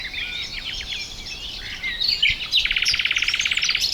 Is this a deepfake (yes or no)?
no